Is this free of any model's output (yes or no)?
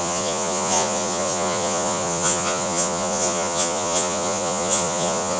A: no